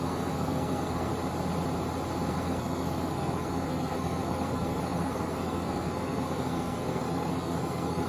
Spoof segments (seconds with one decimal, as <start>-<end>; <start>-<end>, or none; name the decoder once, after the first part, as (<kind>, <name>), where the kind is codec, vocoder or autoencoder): 0.0-1.1 (codec, SNAC); 2.3-8.1